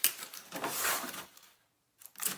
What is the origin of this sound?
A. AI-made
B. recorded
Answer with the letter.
A